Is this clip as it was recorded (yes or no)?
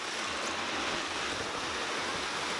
yes